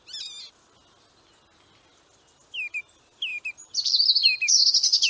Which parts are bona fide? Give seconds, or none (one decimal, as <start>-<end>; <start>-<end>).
0.0-5.1